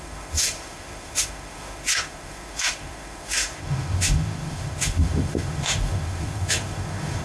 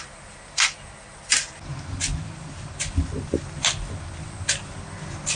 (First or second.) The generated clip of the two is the first